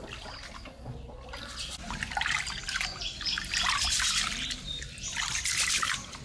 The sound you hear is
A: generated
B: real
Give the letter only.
B